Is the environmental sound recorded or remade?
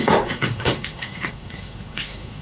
remade